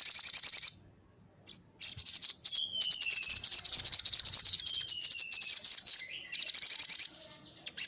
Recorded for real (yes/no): yes